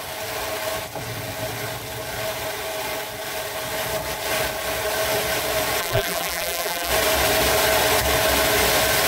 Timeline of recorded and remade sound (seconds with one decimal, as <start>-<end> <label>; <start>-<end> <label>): 0.0-5.8 recorded; 5.8-6.9 remade; 6.9-9.1 recorded